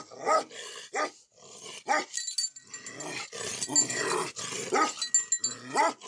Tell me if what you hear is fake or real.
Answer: real